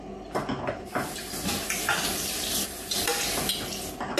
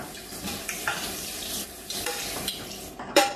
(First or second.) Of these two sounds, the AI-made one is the second